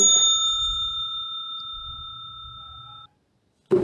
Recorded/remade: recorded